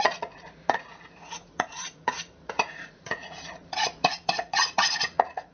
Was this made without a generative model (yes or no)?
no